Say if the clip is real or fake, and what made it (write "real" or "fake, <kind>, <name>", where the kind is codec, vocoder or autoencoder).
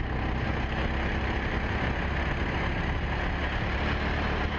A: real